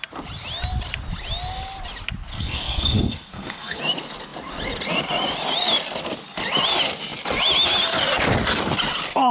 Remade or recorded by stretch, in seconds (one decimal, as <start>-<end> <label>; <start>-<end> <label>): 0.0-2.3 recorded; 2.3-3.8 remade; 3.8-9.3 recorded